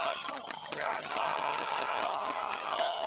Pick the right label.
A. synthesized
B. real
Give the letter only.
A